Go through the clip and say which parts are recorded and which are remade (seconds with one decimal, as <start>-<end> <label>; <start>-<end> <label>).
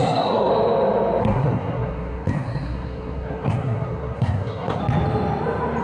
0.0-0.5 remade; 0.5-1.2 recorded; 1.2-4.8 remade; 4.8-5.8 recorded